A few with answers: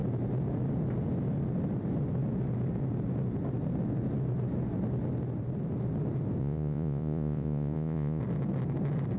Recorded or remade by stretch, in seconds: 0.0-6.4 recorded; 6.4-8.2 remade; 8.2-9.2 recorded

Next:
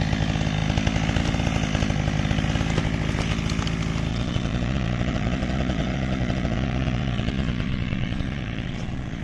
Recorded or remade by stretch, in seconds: 0.0-4.1 recorded; 4.1-9.2 remade

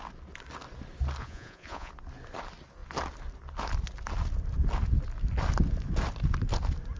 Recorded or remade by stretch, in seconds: 0.0-1.2 recorded; 1.2-1.9 remade; 1.9-7.0 recorded

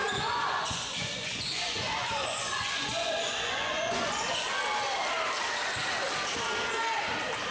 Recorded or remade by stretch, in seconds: 0.0-4.5 remade; 4.5-7.5 recorded